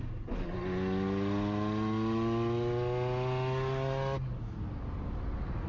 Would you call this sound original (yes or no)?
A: yes